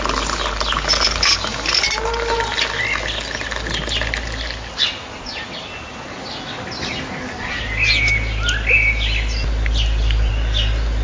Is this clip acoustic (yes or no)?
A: yes